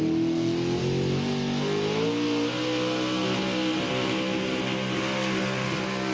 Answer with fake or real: real